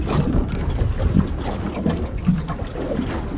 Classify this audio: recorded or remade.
remade